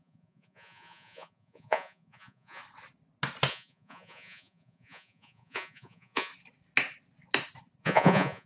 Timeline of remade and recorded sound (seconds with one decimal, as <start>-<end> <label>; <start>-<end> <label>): 0.0-2.6 remade; 2.6-3.5 recorded; 3.5-6.3 remade; 6.3-7.8 recorded; 7.8-8.5 remade